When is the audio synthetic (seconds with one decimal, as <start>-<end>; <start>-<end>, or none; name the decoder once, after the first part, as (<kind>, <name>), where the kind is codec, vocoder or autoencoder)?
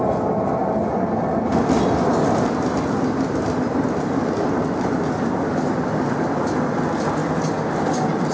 none